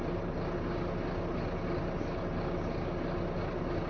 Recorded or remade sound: recorded